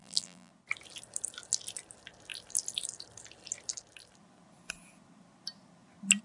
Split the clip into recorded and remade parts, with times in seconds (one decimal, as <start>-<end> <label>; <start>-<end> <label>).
0.0-0.5 remade; 0.5-6.2 recorded